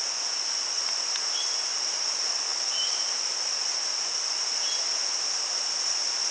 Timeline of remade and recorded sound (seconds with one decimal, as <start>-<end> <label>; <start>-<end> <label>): 0.0-6.3 recorded